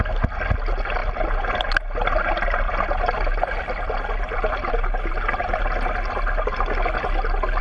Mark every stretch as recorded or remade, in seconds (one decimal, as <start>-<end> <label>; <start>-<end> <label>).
0.0-7.6 recorded